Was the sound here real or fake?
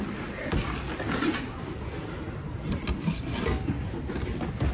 real